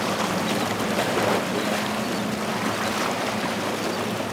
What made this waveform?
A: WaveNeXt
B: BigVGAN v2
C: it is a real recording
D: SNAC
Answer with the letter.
C